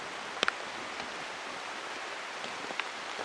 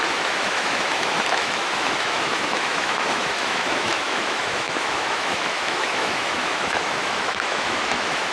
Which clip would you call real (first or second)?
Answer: first